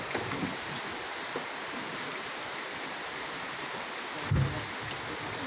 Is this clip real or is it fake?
real